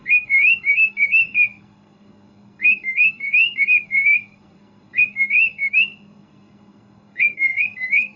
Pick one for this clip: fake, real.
fake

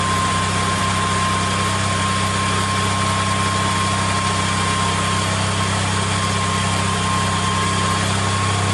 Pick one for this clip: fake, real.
real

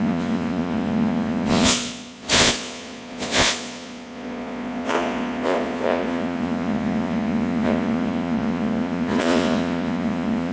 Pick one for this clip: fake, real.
fake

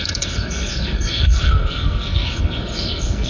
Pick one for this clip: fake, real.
fake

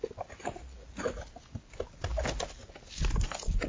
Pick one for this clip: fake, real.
real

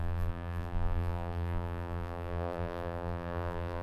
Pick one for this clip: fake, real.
fake